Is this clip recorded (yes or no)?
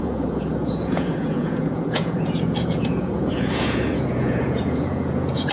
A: no